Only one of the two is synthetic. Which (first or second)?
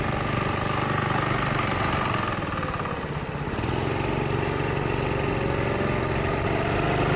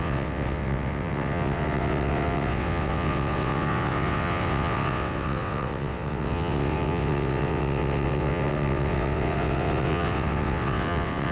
second